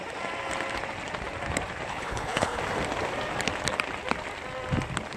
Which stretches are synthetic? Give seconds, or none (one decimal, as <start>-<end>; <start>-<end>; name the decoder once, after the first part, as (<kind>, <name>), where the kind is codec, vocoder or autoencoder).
1.9-2.6 (codec, HILCodec)